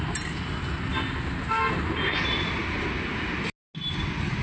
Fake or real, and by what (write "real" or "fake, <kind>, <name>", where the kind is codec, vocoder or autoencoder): real